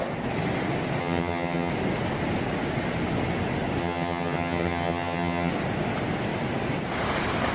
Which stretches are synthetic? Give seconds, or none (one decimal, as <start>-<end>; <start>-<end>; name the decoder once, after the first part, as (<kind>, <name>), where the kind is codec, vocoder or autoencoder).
1.0-1.7 (vocoder, HiFi-GAN); 3.8-5.5